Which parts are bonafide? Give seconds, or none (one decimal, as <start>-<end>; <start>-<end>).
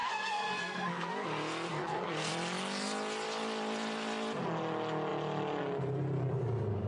1.1-1.7; 2.3-6.9